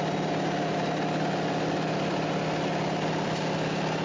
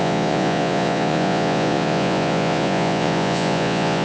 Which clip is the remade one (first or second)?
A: second